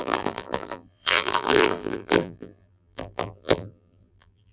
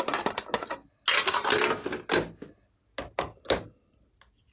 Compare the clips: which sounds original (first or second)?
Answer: second